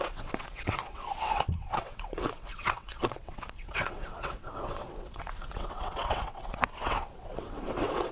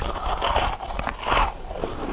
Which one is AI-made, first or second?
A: first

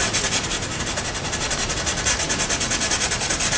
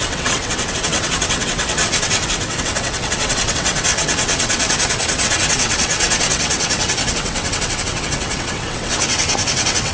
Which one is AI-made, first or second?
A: second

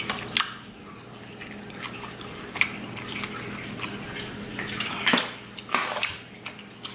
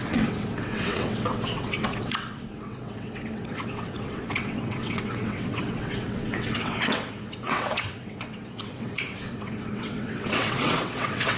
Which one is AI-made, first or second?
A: second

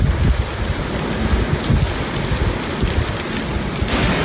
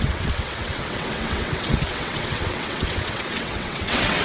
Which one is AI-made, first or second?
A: second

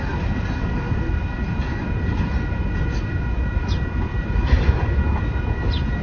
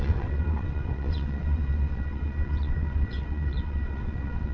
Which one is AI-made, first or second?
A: second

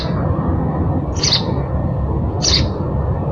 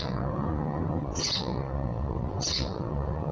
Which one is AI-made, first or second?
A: second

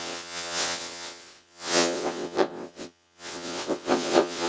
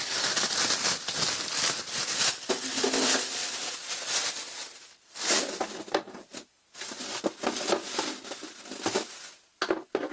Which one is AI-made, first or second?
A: first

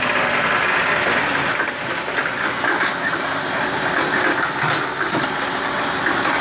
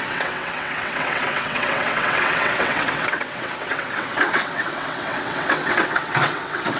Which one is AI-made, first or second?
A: second